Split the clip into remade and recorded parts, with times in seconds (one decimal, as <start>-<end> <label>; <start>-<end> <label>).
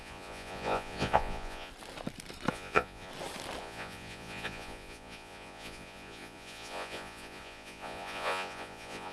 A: 0.0-1.7 remade; 1.7-2.5 recorded; 2.5-3.1 remade; 3.1-3.6 recorded; 3.6-9.1 remade